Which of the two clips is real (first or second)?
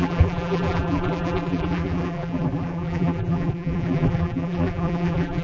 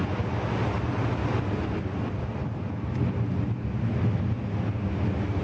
second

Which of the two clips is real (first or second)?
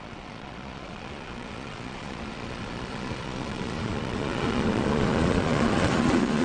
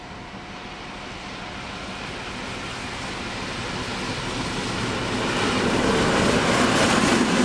second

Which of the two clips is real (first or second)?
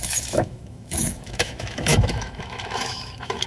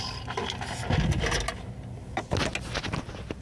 second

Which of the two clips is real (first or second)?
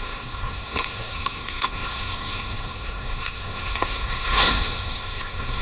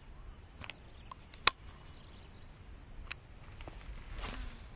second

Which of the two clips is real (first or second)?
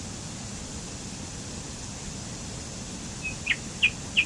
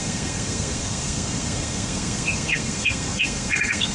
first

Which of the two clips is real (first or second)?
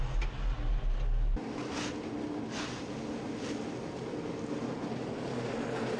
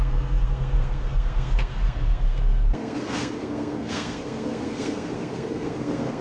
first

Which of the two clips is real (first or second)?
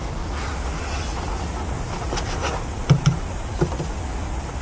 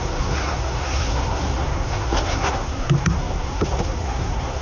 first